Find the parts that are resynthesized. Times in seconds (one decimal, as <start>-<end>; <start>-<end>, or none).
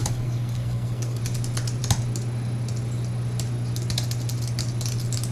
0.0-1.2